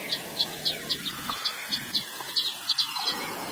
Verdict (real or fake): fake